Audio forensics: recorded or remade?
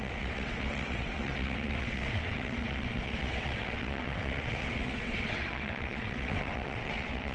remade